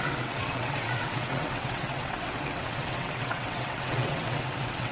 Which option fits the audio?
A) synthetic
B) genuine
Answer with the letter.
A